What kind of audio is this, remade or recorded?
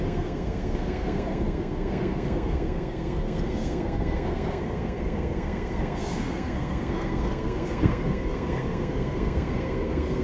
remade